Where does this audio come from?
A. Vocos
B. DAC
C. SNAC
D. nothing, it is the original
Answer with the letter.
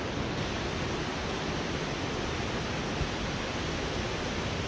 D